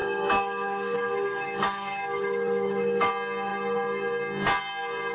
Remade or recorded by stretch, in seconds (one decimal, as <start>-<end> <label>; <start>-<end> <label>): 0.0-3.1 remade; 3.1-5.1 recorded